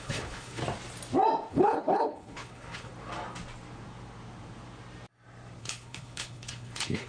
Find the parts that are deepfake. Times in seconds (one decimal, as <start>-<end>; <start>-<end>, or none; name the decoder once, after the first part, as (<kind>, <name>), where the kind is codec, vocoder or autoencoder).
0.0-0.6 (codec, HILCodec); 1.5-2.9; 5.6-7.1